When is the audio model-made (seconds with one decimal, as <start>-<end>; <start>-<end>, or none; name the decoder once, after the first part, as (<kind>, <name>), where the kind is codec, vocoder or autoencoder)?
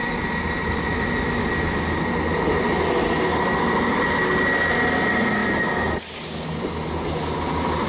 none